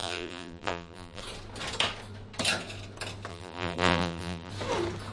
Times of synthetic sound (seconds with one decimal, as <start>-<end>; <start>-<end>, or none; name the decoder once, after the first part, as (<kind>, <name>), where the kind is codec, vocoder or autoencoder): 0.0-1.2 (vocoder, BigVGAN v2); 3.3-4.5